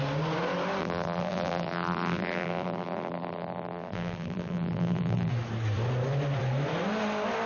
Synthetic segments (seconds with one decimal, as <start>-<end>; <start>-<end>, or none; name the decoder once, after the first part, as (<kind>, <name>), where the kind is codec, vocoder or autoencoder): 0.8-5.3 (vocoder, BigVGAN v2)